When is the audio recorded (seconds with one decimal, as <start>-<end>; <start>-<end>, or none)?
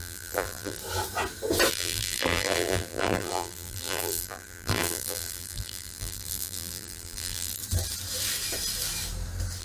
0.8-1.7; 7.6-9.6